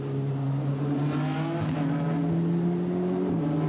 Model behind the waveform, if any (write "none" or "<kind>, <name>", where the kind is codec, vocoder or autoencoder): none